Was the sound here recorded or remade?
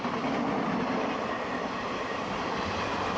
recorded